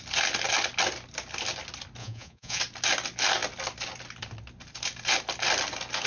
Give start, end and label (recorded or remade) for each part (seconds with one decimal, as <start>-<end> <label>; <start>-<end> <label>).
0.0-2.0 recorded; 2.0-2.6 remade; 2.6-6.1 recorded